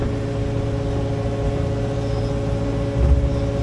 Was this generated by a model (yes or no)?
no